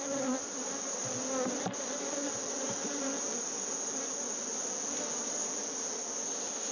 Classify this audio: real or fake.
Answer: real